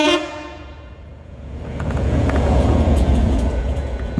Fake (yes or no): yes